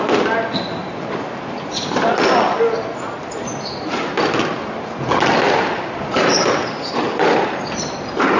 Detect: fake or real real